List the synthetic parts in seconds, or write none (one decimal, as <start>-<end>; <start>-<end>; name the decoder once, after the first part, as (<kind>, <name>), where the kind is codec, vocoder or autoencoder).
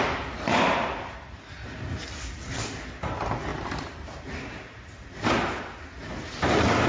3.5-4.2 (vocoder, BigVGAN v2)